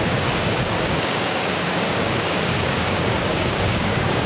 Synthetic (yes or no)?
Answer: yes